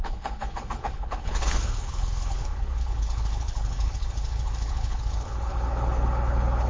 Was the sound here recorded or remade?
remade